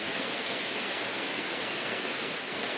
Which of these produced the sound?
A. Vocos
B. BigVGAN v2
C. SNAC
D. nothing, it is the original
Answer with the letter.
C